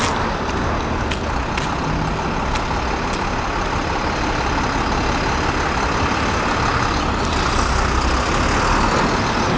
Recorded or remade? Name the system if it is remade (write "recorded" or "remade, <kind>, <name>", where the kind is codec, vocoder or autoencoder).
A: recorded